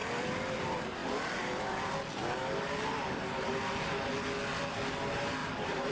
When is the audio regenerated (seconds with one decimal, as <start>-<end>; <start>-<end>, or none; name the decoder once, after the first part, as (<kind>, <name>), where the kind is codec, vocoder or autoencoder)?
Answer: 0.0-0.6 (vocoder, BigVGAN v2); 1.0-2.1; 5.4-5.9